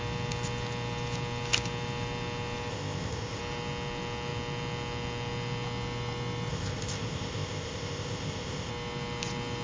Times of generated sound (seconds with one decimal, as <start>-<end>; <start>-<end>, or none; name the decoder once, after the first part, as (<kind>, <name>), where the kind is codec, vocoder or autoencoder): 2.7-3.4 (codec, ZipCodec); 6.5-8.7